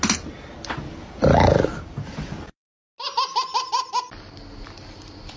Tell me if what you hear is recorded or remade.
recorded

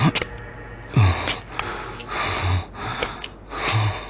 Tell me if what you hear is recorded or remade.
recorded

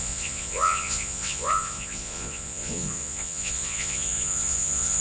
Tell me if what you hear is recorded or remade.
remade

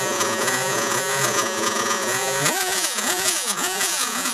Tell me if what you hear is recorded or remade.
remade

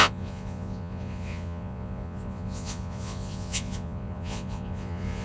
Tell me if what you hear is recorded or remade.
remade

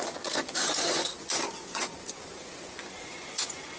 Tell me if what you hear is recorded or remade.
remade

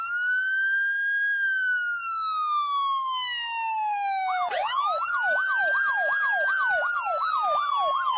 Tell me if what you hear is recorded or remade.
recorded